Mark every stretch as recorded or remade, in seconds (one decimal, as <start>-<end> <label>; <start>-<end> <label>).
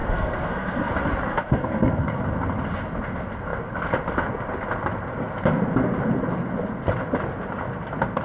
0.0-0.9 remade; 0.9-1.3 recorded; 1.3-2.2 remade; 2.2-8.2 recorded